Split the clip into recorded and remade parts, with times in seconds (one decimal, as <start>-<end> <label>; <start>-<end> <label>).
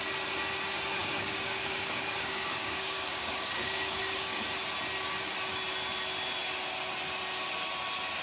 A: 0.0-1.0 recorded; 1.0-4.4 remade; 4.4-8.2 recorded